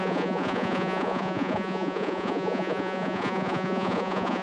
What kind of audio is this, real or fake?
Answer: fake